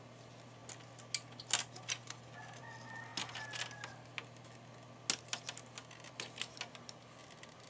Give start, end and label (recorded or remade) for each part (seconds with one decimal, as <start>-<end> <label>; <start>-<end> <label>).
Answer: 0.0-7.7 recorded